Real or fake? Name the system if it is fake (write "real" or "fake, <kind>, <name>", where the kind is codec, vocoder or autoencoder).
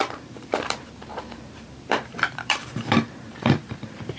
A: fake, vocoder, BigVGAN v2